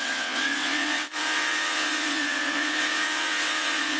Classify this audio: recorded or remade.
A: remade